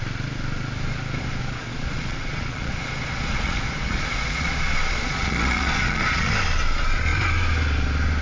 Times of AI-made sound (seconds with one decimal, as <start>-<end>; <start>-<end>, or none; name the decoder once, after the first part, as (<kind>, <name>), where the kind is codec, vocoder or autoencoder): 1.4-6.3 (vocoder, Vocos)